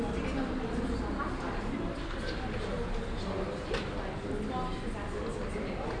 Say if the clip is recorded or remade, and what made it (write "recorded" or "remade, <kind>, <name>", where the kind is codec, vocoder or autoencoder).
recorded